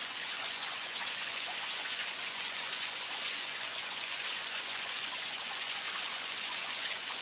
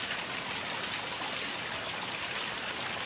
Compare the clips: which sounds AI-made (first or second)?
first